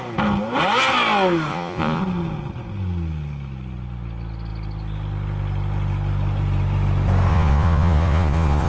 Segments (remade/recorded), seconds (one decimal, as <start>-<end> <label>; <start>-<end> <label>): 0.0-1.5 recorded; 1.5-2.0 remade; 2.0-7.3 recorded; 7.3-8.7 remade